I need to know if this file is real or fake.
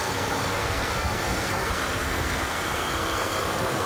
fake